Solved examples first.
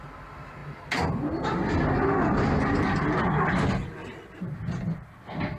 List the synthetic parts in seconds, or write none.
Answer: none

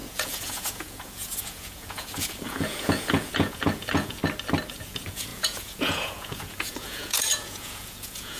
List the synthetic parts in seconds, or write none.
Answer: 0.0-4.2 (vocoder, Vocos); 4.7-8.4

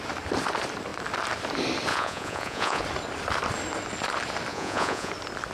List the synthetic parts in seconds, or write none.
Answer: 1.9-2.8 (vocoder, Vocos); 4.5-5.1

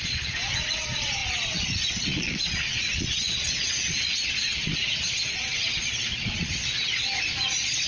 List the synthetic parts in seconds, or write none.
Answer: 0.0-7.9 (vocoder, Vocos)

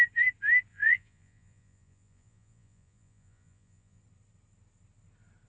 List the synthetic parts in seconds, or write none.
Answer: 0.7-4.0 (vocoder, Vocos)

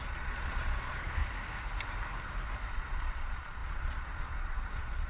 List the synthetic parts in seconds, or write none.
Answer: 0.0-1.2 (vocoder, Vocos); 2.7-5.1

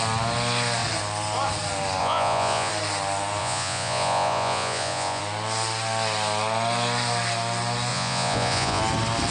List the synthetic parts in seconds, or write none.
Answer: 2.0-2.7 (vocoder, Vocos); 3.4-5.2; 7.9-8.8